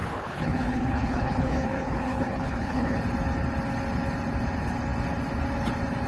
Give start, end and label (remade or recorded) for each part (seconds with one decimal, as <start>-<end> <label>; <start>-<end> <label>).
0.0-3.0 remade; 3.0-6.1 recorded